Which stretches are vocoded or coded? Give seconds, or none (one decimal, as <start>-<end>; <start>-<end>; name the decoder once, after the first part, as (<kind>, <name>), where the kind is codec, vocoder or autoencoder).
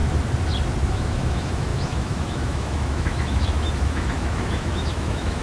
0.9-5.4 (autoencoder, DAC-VAE)